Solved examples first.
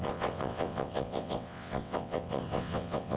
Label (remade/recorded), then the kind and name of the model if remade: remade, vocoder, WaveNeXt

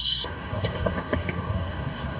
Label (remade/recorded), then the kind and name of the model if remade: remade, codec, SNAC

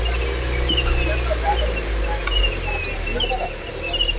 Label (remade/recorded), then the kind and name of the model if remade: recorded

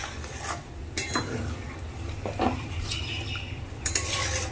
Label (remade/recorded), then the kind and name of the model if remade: remade, vocoder, BigVGAN v2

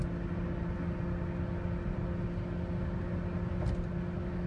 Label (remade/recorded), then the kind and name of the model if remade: recorded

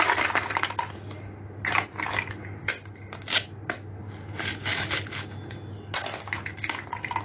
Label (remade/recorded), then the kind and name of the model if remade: recorded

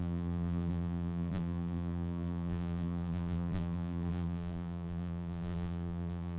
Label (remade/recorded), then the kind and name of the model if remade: remade, vocoder, BigVGAN v2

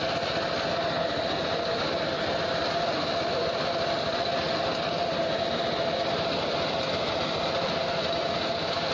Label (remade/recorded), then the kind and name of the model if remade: recorded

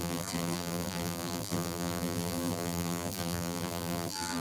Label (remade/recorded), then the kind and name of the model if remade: remade, vocoder, BigVGAN v2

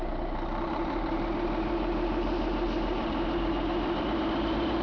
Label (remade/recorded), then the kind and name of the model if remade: remade, vocoder, BigVGAN v2